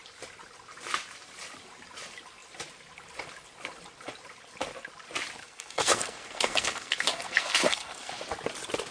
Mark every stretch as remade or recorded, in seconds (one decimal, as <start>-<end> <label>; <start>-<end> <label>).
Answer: 0.0-5.4 recorded; 5.4-8.1 remade; 8.1-8.9 recorded

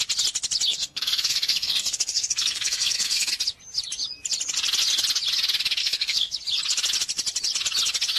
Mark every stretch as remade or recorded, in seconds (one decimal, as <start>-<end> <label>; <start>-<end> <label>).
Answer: 0.0-0.7 recorded; 0.7-3.3 remade; 3.3-5.8 recorded; 5.8-6.3 remade; 6.3-8.2 recorded

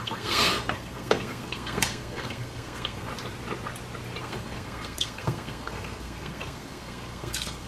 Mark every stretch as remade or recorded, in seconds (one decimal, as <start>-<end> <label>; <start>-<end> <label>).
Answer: 0.0-3.1 remade; 3.1-4.2 recorded; 4.2-7.7 remade

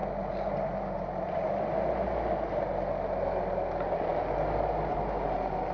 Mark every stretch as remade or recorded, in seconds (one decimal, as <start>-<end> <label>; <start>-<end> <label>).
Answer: 0.0-5.7 recorded

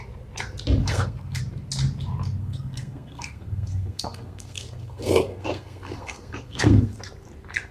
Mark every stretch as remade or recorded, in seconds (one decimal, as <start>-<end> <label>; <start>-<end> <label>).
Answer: 0.0-0.8 recorded; 0.8-1.4 remade; 1.4-2.4 recorded; 2.4-7.0 remade; 7.0-7.7 recorded